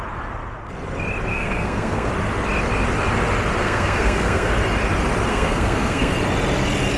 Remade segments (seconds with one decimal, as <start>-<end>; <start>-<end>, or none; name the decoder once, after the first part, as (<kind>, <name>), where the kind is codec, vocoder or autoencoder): 1.3-2.1 (codec, SNAC); 3.6-4.5; 5.3-6.1